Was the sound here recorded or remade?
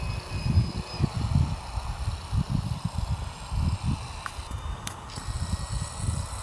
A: recorded